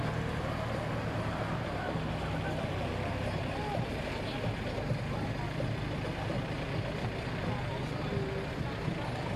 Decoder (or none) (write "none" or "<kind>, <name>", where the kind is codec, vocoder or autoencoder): none